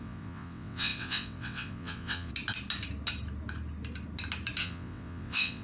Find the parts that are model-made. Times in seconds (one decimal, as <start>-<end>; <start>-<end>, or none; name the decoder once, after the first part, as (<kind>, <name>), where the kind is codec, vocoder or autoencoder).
0.0-2.3 (vocoder, WaveNeXt); 4.6-5.6